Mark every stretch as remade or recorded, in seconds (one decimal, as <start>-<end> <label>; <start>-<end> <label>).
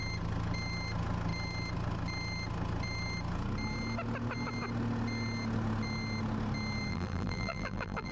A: 0.0-6.9 recorded; 6.9-8.1 remade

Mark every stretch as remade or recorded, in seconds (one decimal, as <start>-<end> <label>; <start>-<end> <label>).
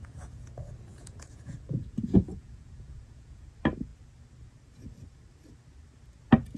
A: 0.0-0.5 remade; 0.5-0.9 recorded; 0.9-3.5 remade; 3.5-6.6 recorded